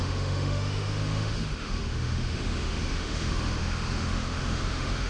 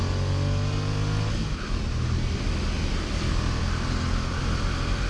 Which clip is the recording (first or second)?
second